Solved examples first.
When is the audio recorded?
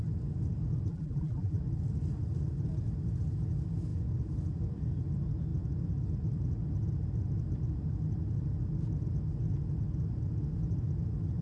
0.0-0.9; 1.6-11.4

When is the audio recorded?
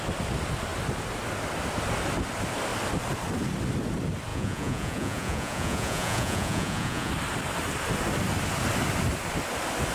0.0-4.3; 7.1-9.9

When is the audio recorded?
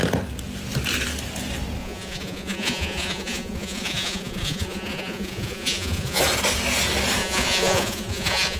0.0-1.8; 6.2-7.2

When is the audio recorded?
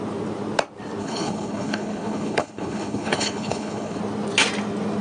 0.0-1.0; 4.0-5.0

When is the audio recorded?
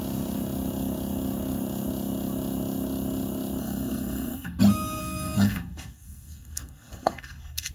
0.0-3.6; 4.6-5.0